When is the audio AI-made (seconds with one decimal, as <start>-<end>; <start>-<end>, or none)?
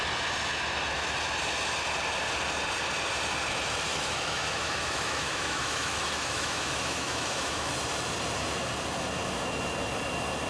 3.9-7.7